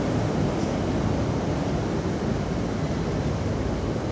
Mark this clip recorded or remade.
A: recorded